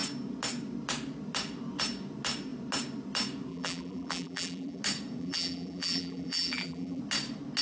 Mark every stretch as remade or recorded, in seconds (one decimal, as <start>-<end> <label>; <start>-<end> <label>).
0.0-3.5 recorded; 3.5-4.8 remade; 4.8-5.2 recorded; 5.2-7.0 remade; 7.0-7.6 recorded